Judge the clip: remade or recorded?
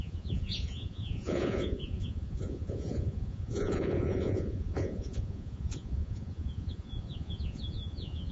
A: remade